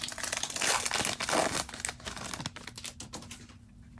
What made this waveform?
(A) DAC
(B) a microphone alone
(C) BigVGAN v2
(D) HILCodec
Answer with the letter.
B